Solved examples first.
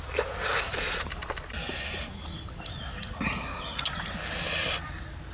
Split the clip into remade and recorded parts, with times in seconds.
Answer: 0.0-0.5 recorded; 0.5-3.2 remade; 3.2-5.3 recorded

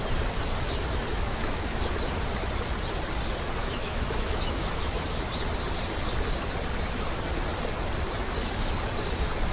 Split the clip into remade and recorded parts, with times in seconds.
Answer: 0.0-1.1 recorded; 1.1-1.7 remade; 1.7-3.6 recorded; 3.6-5.3 remade; 5.3-9.5 recorded